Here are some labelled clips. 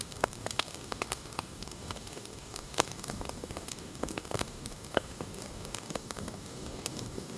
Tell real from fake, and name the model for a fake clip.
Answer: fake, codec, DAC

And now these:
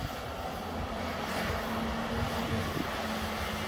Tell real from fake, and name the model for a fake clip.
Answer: real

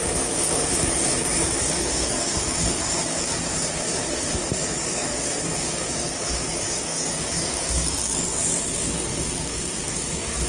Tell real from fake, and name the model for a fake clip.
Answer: fake, codec, DAC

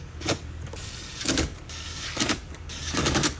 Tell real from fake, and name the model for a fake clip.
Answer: fake, codec, DAC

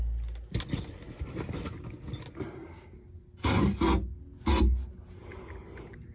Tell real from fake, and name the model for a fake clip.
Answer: real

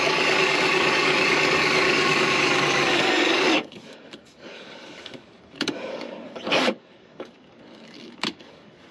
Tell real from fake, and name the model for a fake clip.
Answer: fake, codec, DAC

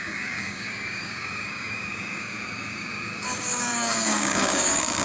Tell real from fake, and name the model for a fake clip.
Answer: fake, codec, DAC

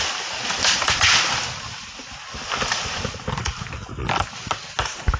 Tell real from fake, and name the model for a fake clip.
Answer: real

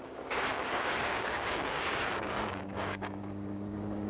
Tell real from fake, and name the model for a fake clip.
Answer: fake, codec, DAC